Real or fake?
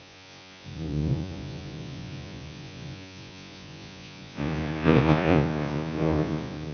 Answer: fake